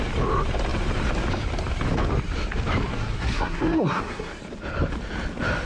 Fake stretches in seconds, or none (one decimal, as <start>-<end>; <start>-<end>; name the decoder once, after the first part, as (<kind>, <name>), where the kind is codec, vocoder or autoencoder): 2.9-4.3 (codec, SNAC)